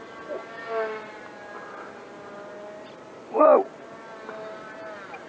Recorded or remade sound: recorded